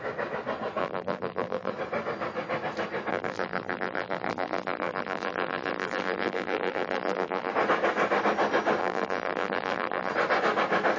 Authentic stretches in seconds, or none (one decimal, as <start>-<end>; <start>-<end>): 0.0-0.8; 1.7-3.1; 7.5-8.8; 10.1-11.0